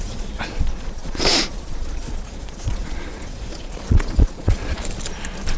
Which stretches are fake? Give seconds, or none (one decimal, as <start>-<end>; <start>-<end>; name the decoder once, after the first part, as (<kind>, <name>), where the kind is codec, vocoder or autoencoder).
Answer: 0.0-4.8 (vocoder, Vocos)